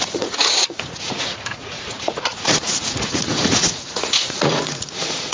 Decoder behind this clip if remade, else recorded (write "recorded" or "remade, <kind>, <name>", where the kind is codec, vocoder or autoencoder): remade, vocoder, Vocos